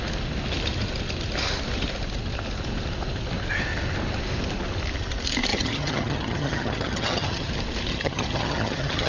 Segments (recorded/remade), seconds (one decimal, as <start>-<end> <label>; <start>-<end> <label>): 0.0-5.5 recorded; 5.5-7.5 remade; 7.5-7.9 recorded; 7.9-9.1 remade